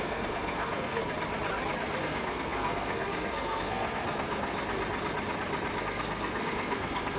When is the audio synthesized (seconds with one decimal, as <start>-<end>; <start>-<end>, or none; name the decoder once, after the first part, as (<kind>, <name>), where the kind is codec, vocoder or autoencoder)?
0.0-1.0 (codec, SNAC); 2.0-4.5; 5.8-7.2